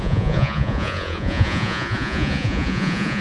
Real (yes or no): no